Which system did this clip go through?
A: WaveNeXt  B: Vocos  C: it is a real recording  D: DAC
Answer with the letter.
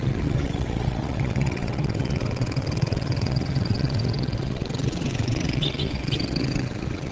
A